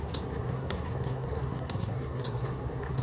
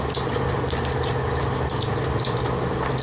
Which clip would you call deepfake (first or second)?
first